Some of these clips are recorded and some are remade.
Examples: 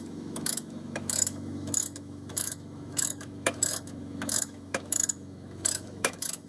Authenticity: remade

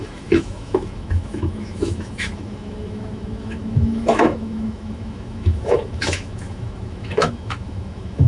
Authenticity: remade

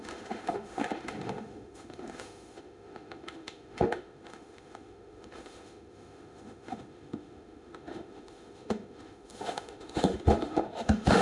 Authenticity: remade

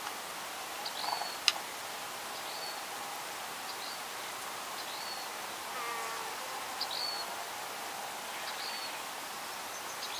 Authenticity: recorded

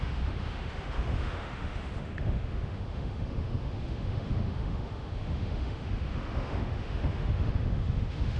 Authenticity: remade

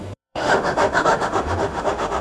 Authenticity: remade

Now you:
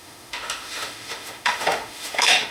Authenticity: remade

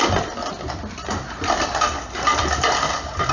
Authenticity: recorded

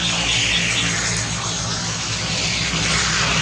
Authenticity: recorded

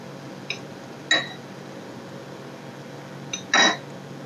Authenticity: recorded